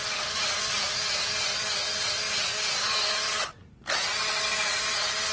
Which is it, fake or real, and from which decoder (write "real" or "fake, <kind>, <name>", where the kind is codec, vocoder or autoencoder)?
real